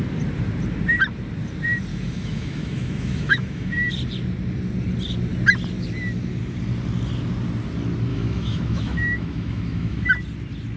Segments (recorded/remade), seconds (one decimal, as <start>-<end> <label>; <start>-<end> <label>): 0.0-1.9 recorded; 1.9-3.9 remade; 3.9-8.1 recorded; 8.1-10.1 remade; 10.1-10.8 recorded